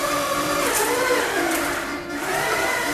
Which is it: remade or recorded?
remade